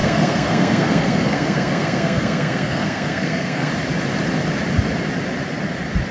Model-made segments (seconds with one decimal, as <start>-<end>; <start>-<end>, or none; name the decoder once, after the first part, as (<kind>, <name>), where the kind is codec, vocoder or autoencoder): 0.0-3.7 (codec, SNAC)